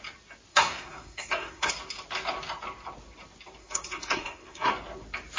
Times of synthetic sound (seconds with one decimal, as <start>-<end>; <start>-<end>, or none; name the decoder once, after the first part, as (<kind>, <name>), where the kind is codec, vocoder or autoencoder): 0.5-1.7 (codec, SNAC); 3.6-4.7